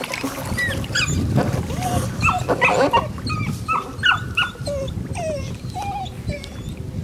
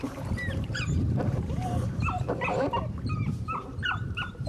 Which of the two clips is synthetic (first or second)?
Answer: second